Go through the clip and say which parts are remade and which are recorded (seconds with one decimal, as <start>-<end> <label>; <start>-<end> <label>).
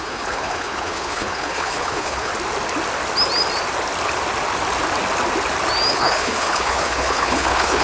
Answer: 0.0-2.3 remade; 2.3-5.9 recorded; 5.9-7.8 remade